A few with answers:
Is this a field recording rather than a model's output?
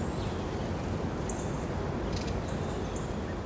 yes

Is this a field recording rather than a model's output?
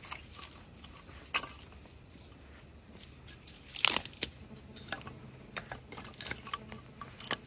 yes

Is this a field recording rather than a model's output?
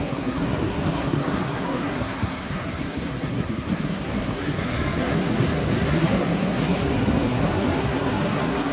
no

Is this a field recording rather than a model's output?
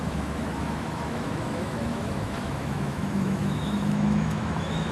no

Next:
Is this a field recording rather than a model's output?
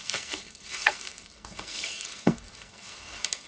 no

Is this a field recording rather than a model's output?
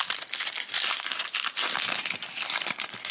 yes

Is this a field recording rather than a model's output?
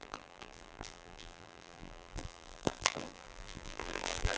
no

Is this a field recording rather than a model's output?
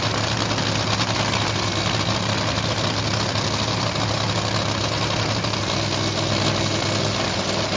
yes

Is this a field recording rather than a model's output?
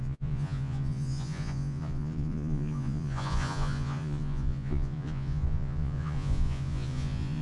no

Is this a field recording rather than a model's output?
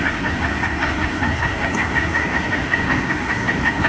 no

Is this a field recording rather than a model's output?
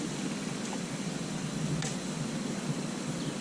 yes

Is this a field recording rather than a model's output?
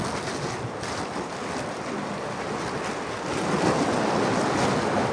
yes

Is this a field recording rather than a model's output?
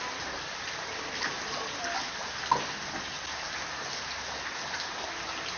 yes